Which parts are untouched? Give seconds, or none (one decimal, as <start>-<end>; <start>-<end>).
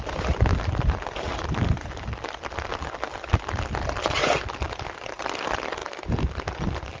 0.5-1.7; 2.7-5.2; 5.8-6.4